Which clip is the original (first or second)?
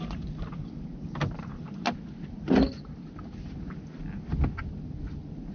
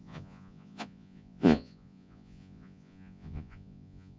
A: first